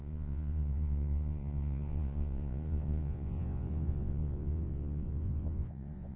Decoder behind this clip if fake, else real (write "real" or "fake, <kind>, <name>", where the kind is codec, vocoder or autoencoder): fake, vocoder, Vocos